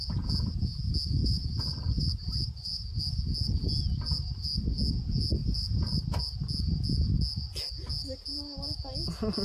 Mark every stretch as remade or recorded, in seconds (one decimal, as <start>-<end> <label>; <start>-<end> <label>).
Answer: 0.0-1.2 recorded; 1.2-3.0 remade; 3.0-5.4 recorded; 5.4-6.2 remade; 6.2-9.4 recorded

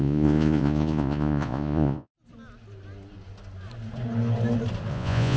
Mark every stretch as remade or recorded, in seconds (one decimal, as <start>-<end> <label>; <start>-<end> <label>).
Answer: 0.0-2.1 remade; 2.1-4.9 recorded; 4.9-5.4 remade

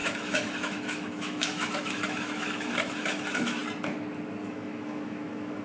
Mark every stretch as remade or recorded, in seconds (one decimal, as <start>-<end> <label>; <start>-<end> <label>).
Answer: 0.0-3.6 remade; 3.6-4.4 recorded; 4.4-5.6 remade

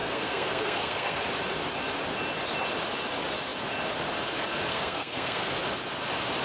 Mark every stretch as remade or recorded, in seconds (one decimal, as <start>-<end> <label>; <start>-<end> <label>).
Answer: 0.0-1.2 remade; 1.2-4.7 recorded; 4.7-5.5 remade; 5.5-6.4 recorded

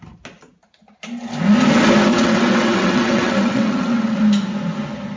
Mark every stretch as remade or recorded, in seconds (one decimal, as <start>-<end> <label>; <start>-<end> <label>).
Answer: 0.0-2.1 recorded; 2.1-4.2 remade; 4.2-5.2 recorded

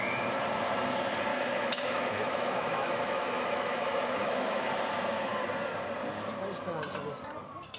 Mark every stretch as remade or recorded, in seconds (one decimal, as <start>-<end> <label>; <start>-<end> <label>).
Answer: 0.0-1.3 recorded; 1.3-4.7 remade; 4.7-7.8 recorded

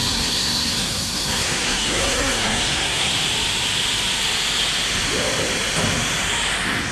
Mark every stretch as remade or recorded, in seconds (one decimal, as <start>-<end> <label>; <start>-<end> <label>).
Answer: 0.0-3.1 remade; 3.1-6.9 recorded

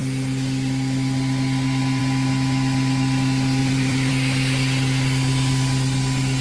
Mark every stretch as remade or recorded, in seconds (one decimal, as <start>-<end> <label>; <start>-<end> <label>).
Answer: 0.0-3.6 recorded; 3.6-4.1 remade; 4.1-6.4 recorded